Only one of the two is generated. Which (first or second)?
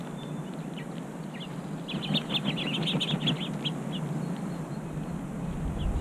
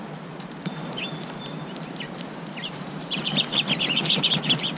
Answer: second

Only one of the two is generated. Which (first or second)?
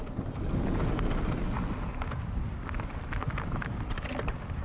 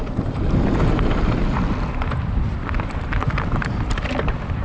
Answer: second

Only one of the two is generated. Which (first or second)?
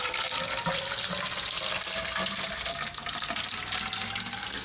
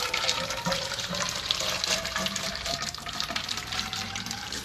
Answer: second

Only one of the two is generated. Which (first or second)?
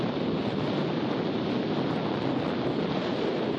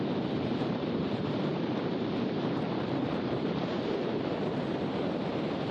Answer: second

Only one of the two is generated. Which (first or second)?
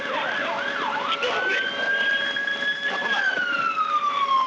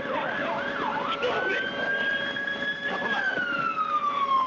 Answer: first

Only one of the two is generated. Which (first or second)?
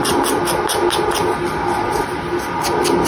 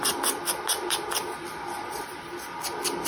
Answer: second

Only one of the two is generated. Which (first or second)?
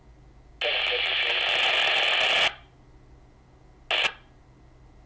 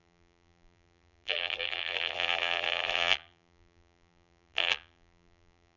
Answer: second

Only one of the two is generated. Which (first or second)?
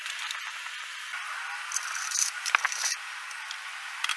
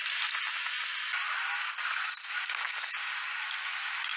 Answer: first